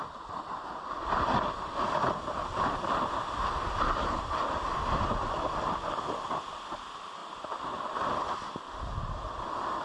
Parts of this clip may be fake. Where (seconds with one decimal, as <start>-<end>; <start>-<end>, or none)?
none